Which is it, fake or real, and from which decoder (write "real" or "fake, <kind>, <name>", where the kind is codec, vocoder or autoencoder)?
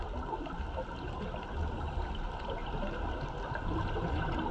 real